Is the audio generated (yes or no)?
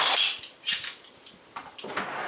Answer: no